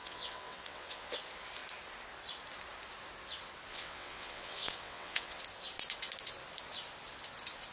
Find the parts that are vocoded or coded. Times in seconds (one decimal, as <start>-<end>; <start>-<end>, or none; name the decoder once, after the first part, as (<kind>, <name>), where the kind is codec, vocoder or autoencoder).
0.0-1.1 (vocoder, WaveNeXt); 3.7-5.4